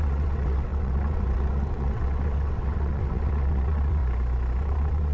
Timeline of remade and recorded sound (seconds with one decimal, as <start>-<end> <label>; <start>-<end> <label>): 0.0-4.0 remade; 4.0-4.6 recorded; 4.6-5.1 remade